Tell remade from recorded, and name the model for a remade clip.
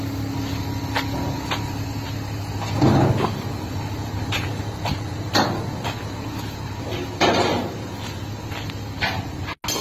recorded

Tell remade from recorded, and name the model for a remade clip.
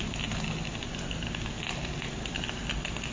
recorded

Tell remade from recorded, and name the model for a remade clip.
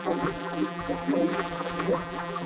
remade, vocoder, BigVGAN v2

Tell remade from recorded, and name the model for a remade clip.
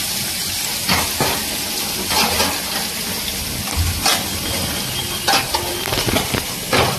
recorded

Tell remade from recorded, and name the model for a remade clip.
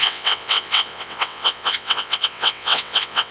remade, vocoder, WaveNeXt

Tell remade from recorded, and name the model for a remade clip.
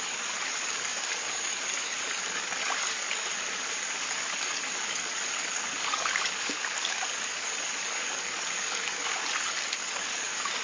remade, codec, DAC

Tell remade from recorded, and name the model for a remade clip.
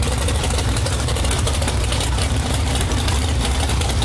remade, vocoder, BigVGAN v2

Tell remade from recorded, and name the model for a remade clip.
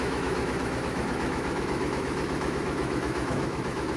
remade, autoencoder, DAC-VAE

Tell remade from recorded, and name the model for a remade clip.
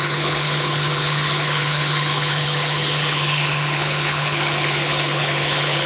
remade, codec, HILCodec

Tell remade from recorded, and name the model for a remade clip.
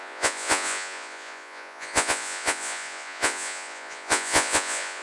remade, vocoder, Vocos